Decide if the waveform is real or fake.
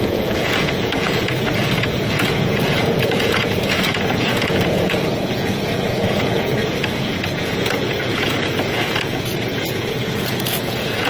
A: fake